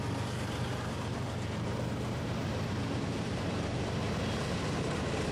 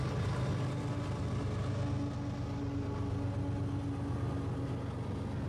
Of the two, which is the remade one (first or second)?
first